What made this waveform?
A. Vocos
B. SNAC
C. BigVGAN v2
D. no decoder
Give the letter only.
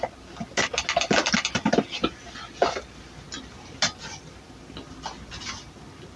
D